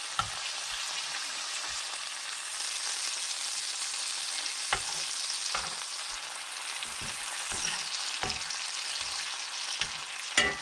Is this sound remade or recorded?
recorded